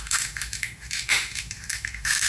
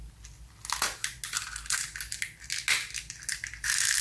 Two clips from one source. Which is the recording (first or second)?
second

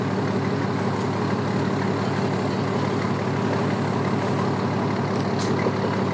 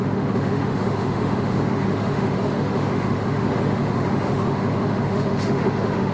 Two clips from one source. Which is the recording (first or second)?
first